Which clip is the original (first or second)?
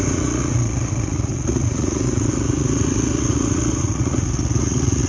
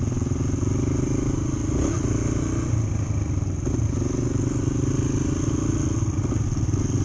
second